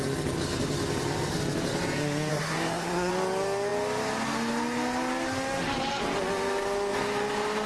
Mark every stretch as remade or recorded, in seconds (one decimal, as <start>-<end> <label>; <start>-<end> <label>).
0.0-2.3 recorded; 2.3-3.1 remade; 3.1-7.7 recorded